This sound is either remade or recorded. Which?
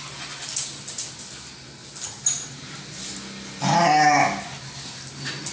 recorded